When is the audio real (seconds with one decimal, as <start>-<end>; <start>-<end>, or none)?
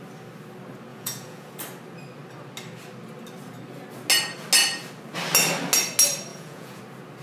0.0-0.9; 1.5-6.3; 6.8-7.2